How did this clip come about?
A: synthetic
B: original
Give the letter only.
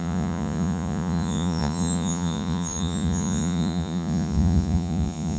A